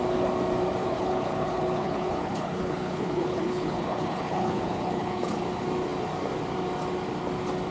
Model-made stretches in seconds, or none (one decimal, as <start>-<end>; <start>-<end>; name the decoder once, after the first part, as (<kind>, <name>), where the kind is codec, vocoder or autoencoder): 0.8-5.4 (codec, HILCodec)